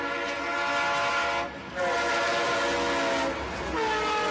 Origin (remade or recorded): recorded